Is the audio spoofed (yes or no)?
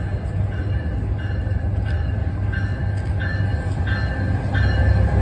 no